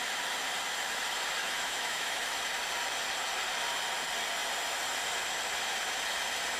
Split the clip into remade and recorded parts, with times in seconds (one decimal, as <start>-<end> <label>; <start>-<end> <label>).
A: 0.0-1.4 recorded; 1.4-2.4 remade; 2.4-6.6 recorded